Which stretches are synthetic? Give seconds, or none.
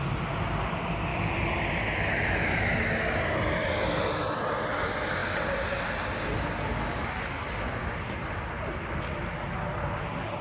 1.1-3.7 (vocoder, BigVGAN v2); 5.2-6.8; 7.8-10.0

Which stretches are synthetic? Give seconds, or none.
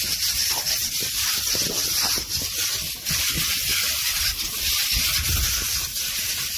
0.8-4.8 (vocoder, BigVGAN v2)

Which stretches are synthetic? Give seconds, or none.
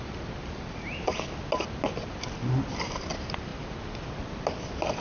0.4-1.2 (vocoder, BigVGAN v2)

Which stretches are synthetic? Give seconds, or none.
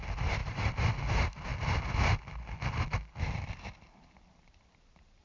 0.4-0.9 (vocoder, BigVGAN v2)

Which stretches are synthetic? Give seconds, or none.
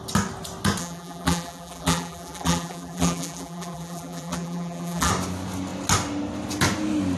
0.8-5.1 (vocoder, BigVGAN v2)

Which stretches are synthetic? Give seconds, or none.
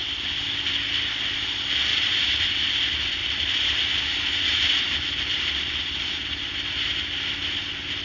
1.9-2.7 (vocoder, BigVGAN v2); 3.2-7.6